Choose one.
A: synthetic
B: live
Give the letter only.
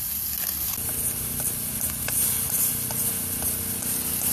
B